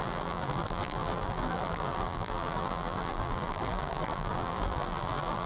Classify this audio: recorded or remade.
remade